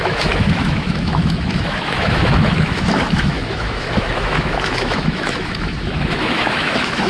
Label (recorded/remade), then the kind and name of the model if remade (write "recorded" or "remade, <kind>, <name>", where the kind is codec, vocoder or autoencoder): remade, autoencoder, DAC-VAE